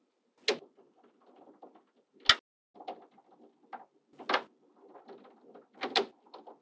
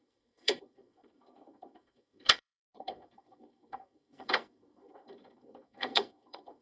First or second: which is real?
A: first